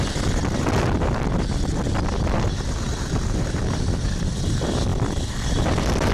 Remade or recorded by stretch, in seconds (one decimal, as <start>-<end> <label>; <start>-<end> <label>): 0.0-0.4 remade; 0.4-4.1 recorded; 4.1-6.1 remade